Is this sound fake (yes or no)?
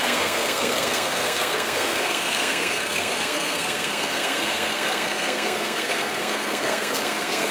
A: yes